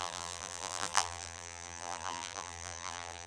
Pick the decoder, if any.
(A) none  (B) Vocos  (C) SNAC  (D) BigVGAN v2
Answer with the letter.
D